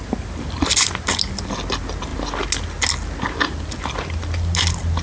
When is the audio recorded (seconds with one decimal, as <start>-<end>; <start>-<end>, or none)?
0.0-5.0